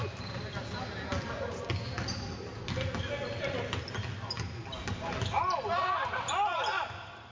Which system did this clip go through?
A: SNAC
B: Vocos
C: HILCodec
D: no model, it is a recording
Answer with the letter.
D